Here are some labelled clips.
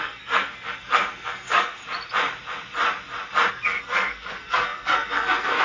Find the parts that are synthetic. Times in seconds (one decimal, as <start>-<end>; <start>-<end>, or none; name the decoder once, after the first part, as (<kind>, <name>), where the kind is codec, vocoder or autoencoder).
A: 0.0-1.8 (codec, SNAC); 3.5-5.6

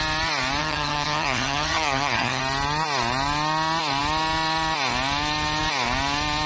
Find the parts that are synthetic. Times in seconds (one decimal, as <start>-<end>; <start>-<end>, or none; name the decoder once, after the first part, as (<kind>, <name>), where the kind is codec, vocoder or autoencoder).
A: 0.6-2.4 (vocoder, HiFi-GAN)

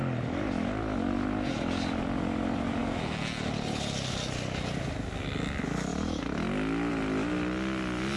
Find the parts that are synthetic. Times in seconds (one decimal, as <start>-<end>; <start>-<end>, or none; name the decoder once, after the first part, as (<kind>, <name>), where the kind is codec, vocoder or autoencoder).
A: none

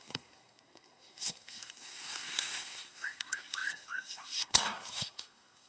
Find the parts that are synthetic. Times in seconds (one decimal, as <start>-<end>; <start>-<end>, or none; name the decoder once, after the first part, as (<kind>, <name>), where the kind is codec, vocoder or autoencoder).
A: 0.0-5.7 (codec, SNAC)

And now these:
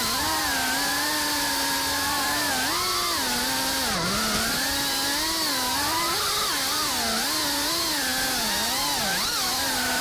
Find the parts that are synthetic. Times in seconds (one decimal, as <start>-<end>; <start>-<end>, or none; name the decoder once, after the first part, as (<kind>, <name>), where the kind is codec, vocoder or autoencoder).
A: none